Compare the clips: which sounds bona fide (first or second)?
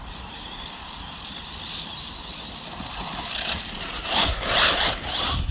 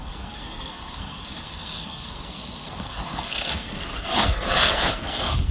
first